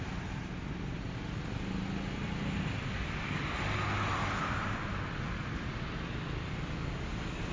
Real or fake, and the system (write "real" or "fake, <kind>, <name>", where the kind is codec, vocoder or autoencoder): real